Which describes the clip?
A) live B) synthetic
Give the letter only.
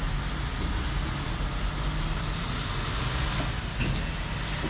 A